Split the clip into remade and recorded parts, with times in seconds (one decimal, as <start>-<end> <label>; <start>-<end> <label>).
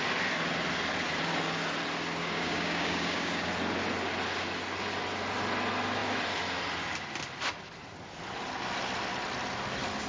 0.0-2.2 recorded; 2.2-3.5 remade; 3.5-10.1 recorded